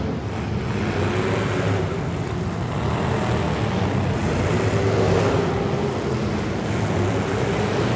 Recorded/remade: recorded